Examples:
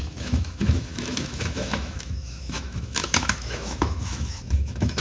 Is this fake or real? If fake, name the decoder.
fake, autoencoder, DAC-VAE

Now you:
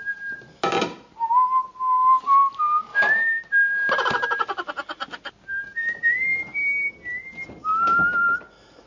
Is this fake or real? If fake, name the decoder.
real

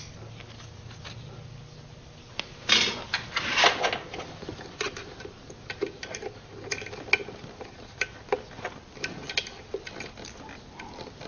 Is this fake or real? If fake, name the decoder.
real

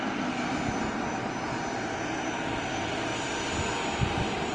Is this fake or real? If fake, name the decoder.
real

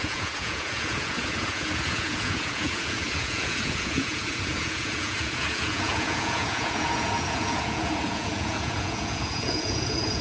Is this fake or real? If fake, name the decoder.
fake, vocoder, Vocos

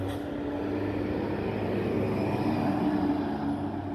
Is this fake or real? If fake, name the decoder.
real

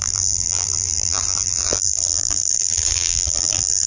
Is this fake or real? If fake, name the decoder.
fake, vocoder, BigVGAN v2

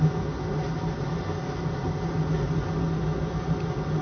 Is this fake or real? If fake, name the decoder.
real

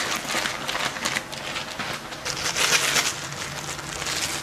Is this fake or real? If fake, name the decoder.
real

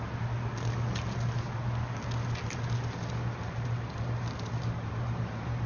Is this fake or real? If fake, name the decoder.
real